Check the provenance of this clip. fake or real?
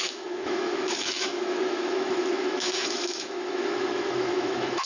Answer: fake